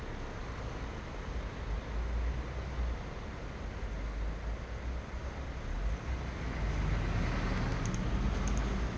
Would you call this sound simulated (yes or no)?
no